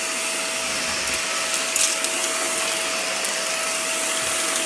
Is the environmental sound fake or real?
real